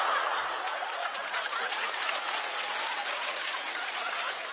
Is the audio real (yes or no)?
no